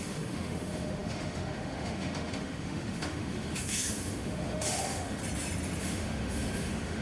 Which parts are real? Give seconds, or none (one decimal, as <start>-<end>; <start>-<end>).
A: 5.2-5.8